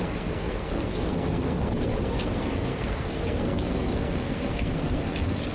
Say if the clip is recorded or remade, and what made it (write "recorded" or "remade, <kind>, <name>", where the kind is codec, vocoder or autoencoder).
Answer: remade, codec, SNAC